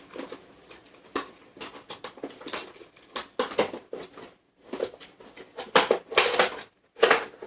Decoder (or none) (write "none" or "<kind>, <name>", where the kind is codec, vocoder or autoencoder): none